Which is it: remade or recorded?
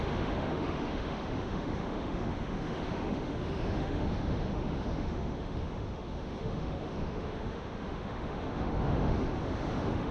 remade